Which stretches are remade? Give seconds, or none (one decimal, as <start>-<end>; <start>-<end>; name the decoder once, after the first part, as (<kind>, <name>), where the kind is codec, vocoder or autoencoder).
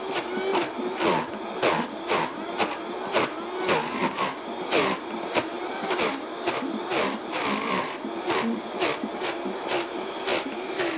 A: 4.0-9.2 (vocoder, BigVGAN v2); 10.3-11.0